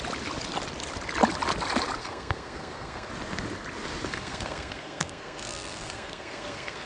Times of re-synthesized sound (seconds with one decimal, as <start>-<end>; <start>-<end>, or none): 2.0-3.1; 4.1-6.9